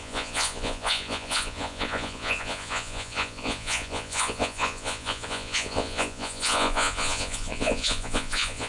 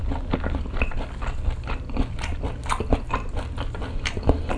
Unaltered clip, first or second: second